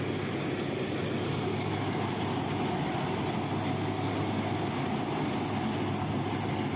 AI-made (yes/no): no